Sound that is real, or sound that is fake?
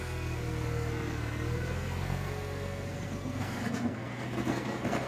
fake